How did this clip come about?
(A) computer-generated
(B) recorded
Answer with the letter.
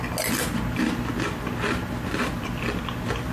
B